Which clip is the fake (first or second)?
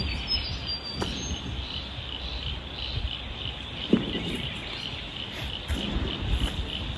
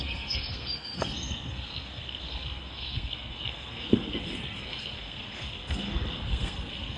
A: second